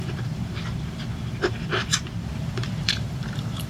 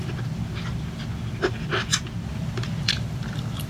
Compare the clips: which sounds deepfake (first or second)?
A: first